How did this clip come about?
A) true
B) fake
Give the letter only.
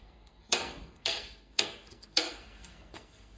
B